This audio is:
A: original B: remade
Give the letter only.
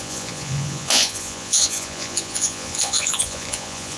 B